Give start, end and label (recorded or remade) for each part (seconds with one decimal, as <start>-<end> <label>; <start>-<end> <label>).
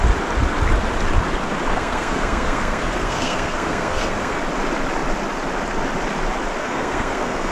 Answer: 0.0-1.7 recorded; 1.7-4.4 remade; 4.4-6.6 recorded; 6.6-7.5 remade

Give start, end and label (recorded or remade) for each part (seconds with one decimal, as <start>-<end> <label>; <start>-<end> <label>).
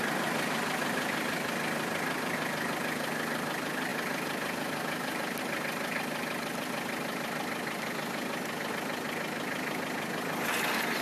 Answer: 0.0-11.0 recorded